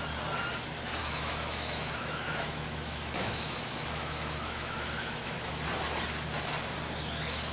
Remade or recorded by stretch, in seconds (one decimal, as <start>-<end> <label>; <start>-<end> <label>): 0.0-1.0 recorded; 1.0-5.5 remade; 5.5-7.5 recorded